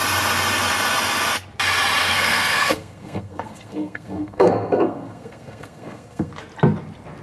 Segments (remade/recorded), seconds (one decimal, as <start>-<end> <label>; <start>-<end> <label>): 0.0-2.0 recorded; 2.0-6.3 remade; 6.3-7.2 recorded